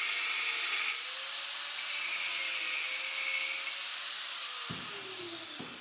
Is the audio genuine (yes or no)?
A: yes